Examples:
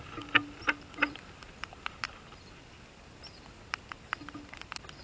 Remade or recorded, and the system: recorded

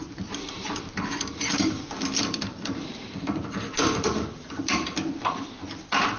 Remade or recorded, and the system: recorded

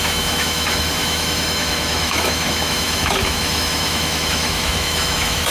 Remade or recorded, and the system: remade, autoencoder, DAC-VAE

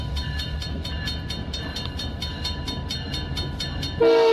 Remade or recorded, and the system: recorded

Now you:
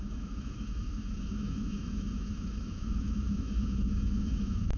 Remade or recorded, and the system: remade, autoencoder, DAC-VAE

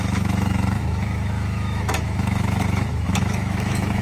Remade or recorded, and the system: remade, autoencoder, DAC-VAE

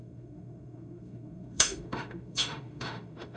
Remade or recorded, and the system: remade, autoencoder, DAC-VAE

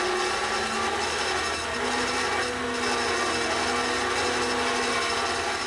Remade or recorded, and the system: recorded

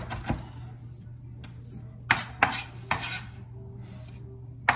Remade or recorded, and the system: recorded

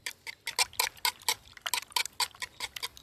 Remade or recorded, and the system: recorded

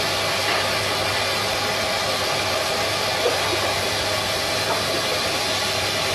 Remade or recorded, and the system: recorded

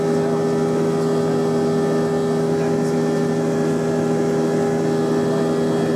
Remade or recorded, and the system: recorded